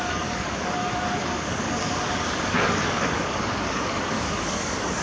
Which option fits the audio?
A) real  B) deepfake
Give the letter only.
B